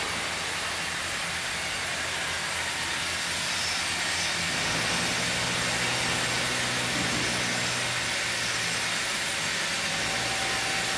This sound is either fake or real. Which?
real